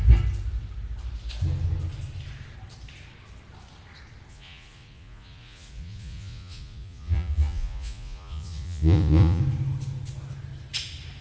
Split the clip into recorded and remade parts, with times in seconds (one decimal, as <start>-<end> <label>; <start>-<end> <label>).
0.0-4.3 recorded; 4.3-9.4 remade; 9.4-11.2 recorded

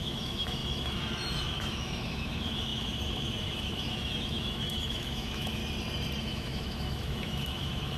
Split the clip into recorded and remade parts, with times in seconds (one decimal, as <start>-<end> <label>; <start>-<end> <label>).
0.0-5.6 remade; 5.6-6.2 recorded; 6.2-8.0 remade